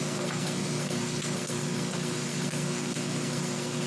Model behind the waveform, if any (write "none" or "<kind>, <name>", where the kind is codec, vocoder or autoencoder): codec, SNAC